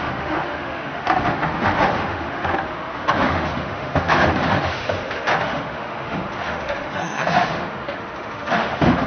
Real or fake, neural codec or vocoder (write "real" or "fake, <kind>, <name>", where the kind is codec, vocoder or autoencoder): fake, autoencoder, DAC-VAE